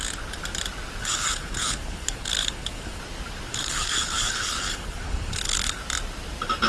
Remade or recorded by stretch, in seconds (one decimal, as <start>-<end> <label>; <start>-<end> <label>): 0.0-1.0 recorded; 1.0-3.0 remade; 3.0-3.5 recorded; 3.5-5.8 remade; 5.8-6.7 recorded